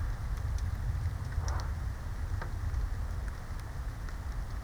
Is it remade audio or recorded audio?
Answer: recorded